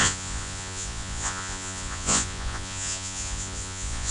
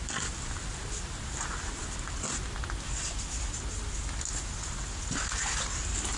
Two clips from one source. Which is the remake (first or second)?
first